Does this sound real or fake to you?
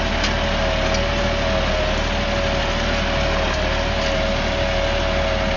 real